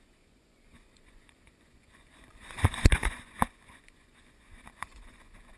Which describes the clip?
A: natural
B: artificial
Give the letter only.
B